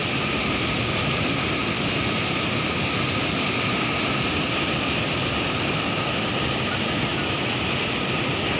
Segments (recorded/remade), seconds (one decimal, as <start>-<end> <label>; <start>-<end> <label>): 0.0-8.6 recorded